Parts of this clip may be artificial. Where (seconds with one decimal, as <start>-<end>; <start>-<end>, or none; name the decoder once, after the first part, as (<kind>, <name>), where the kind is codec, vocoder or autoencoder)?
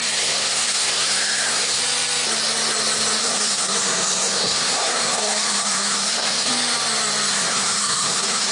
0.0-1.8 (codec, SNAC); 3.2-6.5; 7.3-8.5